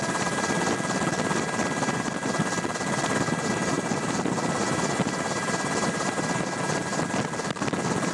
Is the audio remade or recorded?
recorded